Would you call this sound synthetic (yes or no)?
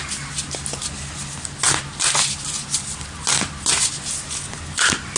no